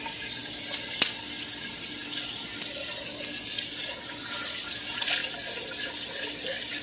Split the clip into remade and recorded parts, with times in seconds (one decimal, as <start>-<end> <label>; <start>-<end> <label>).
0.0-6.8 recorded